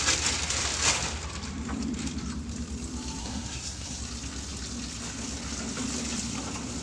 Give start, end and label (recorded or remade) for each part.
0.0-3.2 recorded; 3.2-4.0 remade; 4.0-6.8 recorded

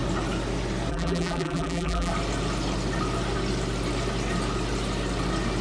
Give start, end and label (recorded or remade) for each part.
0.0-0.9 recorded; 0.9-2.1 remade; 2.1-5.6 recorded

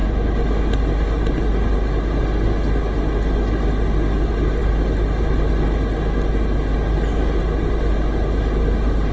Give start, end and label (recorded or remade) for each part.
0.0-9.1 recorded

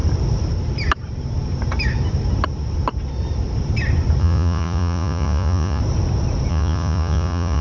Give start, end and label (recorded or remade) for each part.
0.0-4.2 recorded; 4.2-5.8 remade; 5.8-6.5 recorded; 6.5-7.6 remade

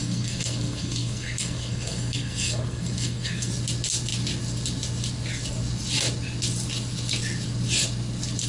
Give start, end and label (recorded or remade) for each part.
0.0-3.5 remade; 3.5-8.5 recorded

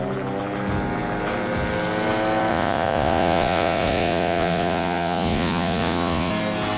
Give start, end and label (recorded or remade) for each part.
0.0-2.5 recorded; 2.5-6.3 remade; 6.3-6.8 recorded